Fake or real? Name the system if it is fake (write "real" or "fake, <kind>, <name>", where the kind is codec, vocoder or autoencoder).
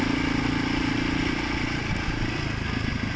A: real